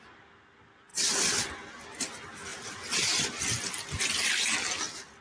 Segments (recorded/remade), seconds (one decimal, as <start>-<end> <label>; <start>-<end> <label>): 0.0-0.9 recorded; 0.9-1.5 remade; 1.5-5.2 recorded